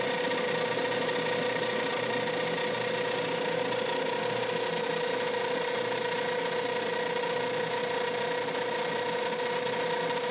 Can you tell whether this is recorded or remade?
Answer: recorded